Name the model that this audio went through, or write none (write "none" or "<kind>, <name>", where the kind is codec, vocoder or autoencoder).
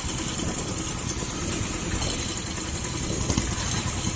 none